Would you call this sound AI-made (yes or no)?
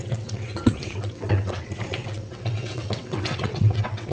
yes